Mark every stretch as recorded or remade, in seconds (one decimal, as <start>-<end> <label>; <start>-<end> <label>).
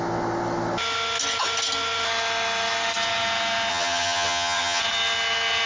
0.0-3.7 recorded; 3.7-4.8 remade; 4.8-5.7 recorded